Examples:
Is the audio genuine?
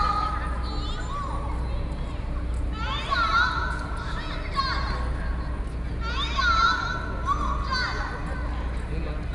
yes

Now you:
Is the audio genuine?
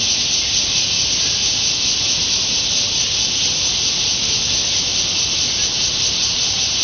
yes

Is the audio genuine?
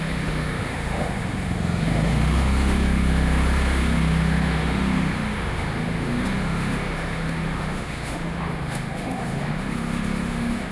no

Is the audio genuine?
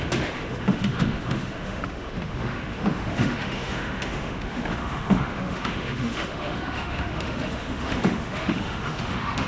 no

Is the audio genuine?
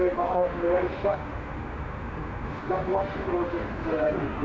no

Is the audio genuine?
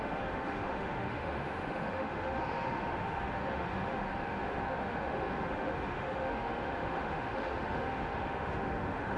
no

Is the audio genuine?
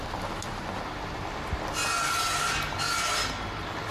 yes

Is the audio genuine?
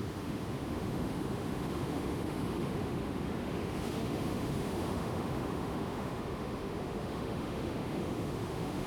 no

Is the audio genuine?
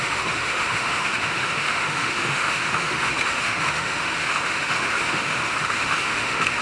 no